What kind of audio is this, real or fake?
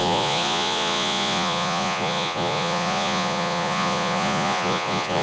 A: fake